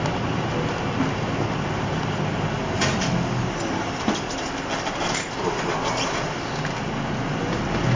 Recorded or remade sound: recorded